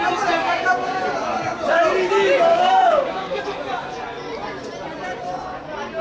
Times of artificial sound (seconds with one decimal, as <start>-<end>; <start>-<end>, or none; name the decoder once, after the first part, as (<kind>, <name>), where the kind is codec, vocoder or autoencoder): 0.4-1.0 (codec, DAC); 2.5-3.4